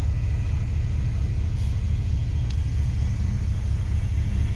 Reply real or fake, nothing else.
fake